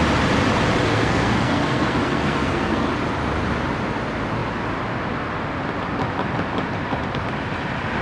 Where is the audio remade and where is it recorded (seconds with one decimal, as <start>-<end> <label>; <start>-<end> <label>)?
0.0-0.9 recorded; 0.9-2.9 remade; 2.9-8.0 recorded